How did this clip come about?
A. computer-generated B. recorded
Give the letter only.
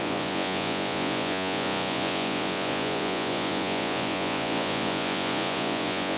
A